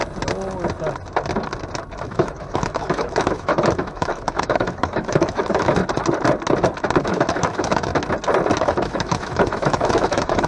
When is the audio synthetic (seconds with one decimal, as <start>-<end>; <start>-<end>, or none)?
2.0-5.8; 7.0-7.9; 8.6-10.5